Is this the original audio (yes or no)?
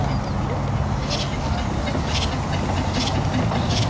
yes